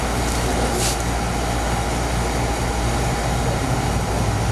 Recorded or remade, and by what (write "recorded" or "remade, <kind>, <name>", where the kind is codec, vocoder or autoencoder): recorded